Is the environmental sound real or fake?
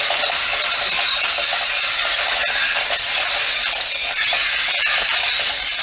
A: real